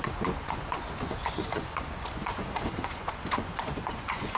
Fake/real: fake